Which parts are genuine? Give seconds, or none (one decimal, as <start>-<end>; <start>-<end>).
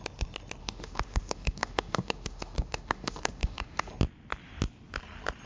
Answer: 0.0-0.6; 3.9-5.5